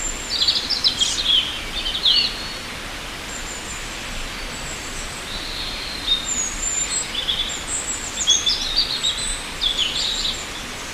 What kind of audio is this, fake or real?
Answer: real